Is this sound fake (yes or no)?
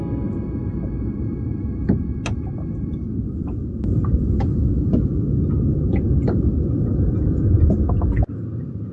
no